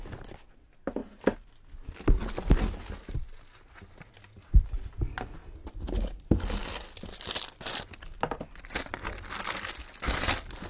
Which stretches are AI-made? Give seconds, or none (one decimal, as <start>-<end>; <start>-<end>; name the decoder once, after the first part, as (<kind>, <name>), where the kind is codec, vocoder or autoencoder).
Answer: none